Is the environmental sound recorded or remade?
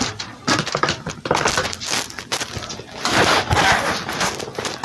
recorded